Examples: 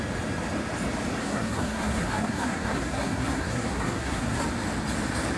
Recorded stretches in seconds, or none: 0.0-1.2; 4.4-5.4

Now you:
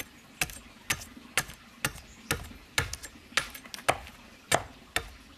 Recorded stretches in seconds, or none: 0.0-5.4

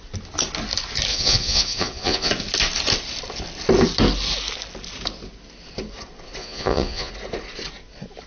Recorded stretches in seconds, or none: 0.0-1.1; 2.3-6.4; 7.1-8.3

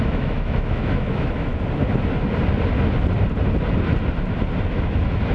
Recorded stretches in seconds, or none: 1.5-4.7

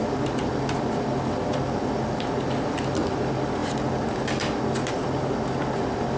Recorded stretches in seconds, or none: 0.0-6.2